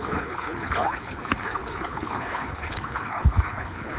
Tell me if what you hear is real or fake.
fake